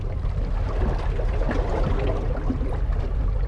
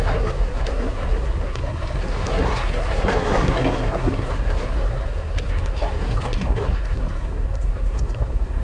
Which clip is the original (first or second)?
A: first